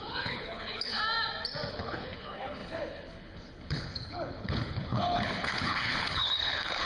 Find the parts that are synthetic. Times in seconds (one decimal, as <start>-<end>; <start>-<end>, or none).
0.0-1.0; 1.7-6.9